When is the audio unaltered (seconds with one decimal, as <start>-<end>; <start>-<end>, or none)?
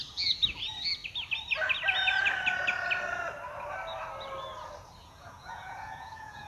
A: 0.0-5.0